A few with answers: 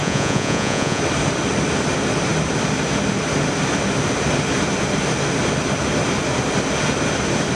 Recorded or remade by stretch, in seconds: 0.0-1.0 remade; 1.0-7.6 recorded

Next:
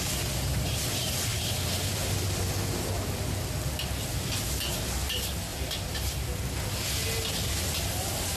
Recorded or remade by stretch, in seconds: 0.0-1.3 recorded; 1.3-2.4 remade; 2.4-5.5 recorded; 5.5-6.0 remade; 6.0-8.4 recorded

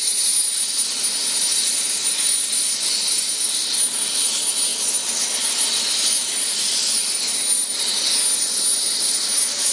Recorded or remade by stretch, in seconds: 0.0-9.7 recorded

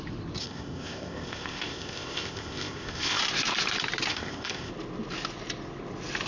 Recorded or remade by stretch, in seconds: 0.0-0.4 recorded; 0.4-3.2 remade; 3.2-4.1 recorded; 4.1-4.7 remade; 4.7-6.3 recorded

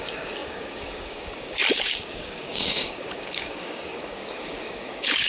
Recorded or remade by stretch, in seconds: 0.0-5.3 remade

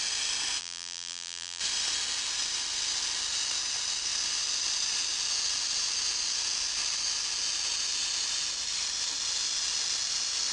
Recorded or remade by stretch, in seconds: 0.0-0.6 recorded; 0.6-1.6 remade; 1.6-10.5 recorded